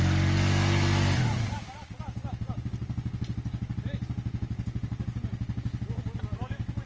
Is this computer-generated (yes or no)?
no